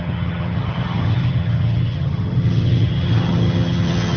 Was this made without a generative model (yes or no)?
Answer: no